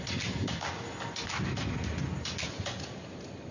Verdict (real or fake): real